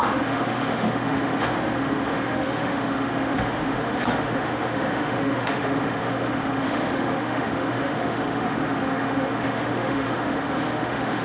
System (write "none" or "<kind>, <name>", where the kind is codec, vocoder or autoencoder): autoencoder, DAC-VAE